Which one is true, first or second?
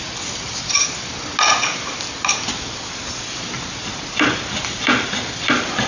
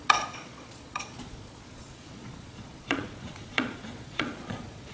first